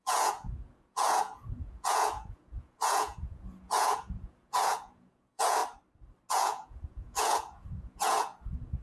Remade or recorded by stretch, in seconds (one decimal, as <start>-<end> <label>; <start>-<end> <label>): 0.0-5.6 remade; 5.6-6.3 recorded; 6.3-8.8 remade